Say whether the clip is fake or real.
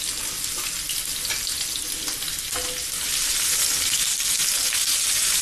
real